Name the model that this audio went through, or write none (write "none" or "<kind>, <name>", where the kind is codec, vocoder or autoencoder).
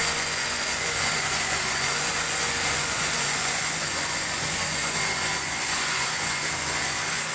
vocoder, Vocos